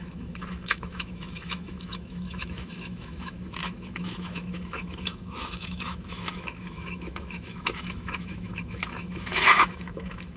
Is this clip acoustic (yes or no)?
no